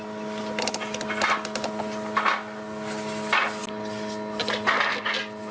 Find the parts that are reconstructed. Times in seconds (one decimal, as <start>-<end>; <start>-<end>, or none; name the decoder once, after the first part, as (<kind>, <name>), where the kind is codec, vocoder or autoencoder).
none